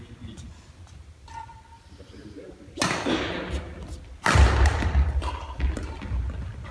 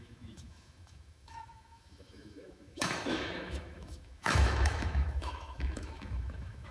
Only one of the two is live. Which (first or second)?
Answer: first